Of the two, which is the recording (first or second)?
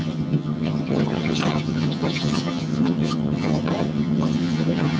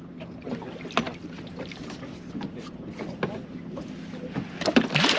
second